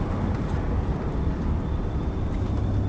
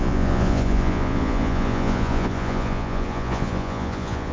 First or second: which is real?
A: first